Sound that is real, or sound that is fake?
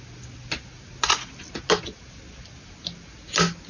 real